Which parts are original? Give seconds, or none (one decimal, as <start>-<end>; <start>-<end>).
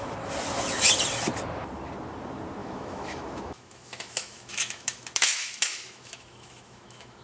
0.0-2.6